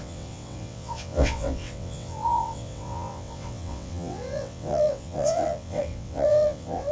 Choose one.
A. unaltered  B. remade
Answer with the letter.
B